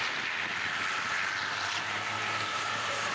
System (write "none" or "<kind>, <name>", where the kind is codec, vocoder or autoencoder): none